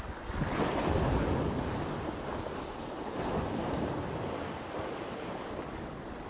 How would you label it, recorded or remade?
recorded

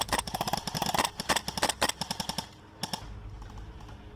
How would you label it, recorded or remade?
recorded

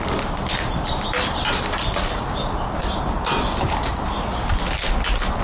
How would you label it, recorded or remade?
recorded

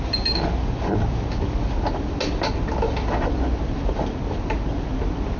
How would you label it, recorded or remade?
recorded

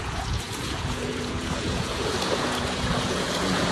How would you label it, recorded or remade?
remade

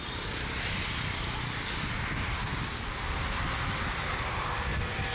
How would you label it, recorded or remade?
recorded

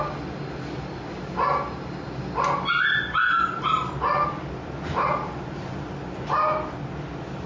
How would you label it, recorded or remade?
recorded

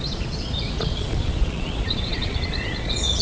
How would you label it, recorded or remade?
remade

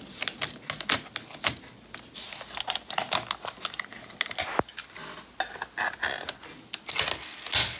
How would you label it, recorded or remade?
recorded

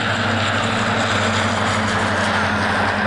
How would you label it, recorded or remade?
recorded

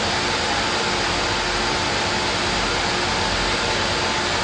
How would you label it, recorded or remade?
recorded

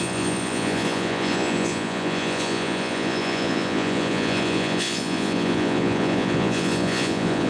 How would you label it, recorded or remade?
remade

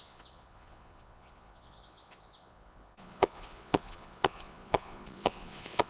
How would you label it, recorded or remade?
remade